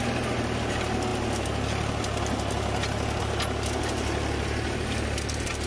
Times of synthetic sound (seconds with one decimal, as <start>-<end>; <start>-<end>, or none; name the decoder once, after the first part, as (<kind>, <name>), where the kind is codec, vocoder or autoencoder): none